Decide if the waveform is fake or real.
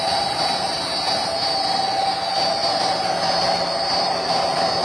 real